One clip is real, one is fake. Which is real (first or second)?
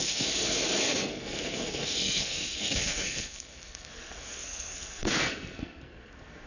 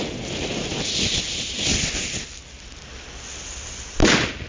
second